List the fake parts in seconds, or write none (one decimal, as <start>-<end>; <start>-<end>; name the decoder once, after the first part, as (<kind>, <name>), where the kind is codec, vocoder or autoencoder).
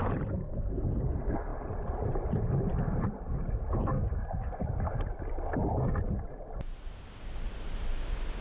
none